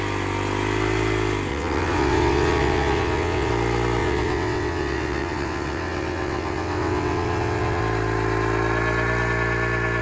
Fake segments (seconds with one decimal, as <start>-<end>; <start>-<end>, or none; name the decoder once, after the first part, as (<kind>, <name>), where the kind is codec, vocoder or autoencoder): 1.5-3.5 (vocoder, WaveNeXt); 4.0-7.8